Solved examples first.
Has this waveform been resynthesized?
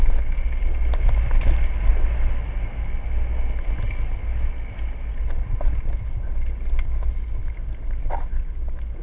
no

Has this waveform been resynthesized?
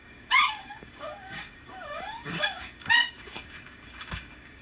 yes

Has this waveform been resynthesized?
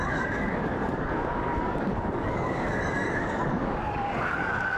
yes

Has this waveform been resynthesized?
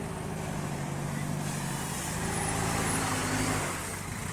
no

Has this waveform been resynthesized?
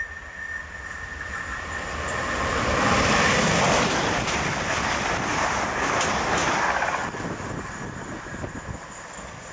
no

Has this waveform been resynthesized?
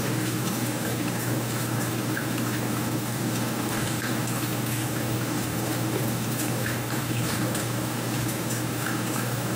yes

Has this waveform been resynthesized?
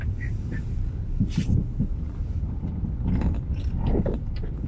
no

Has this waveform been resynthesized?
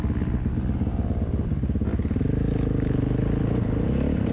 no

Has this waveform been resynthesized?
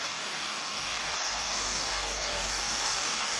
yes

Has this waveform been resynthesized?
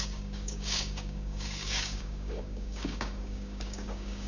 yes